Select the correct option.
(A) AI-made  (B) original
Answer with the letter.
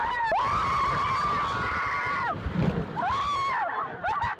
B